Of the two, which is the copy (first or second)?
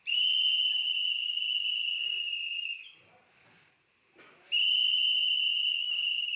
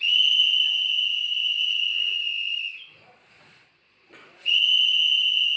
second